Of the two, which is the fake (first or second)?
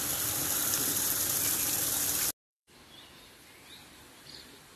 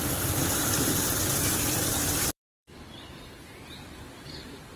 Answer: second